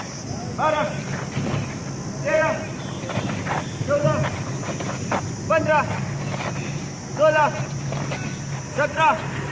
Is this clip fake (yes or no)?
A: no